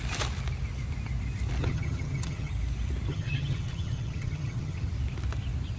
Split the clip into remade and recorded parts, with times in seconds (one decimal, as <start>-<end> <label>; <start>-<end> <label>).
0.0-1.6 recorded; 1.6-2.5 remade; 2.5-3.1 recorded; 3.1-4.9 remade; 4.9-5.8 recorded